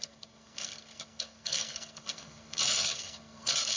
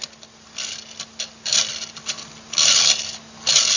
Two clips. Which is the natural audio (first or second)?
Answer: second